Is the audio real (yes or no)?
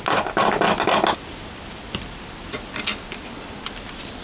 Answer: yes